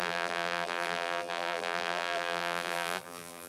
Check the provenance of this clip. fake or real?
fake